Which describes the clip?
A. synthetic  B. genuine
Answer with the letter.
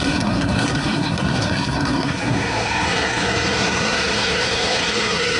A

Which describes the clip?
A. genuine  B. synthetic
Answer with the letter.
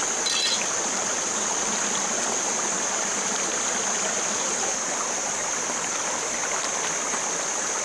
A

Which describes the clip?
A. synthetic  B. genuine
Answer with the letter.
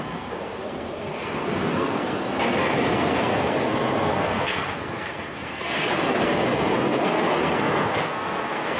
A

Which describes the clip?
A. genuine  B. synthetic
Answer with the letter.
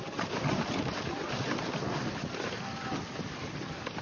A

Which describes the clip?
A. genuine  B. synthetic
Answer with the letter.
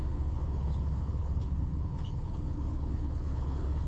B